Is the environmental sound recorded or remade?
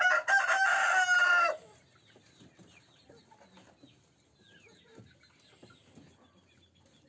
recorded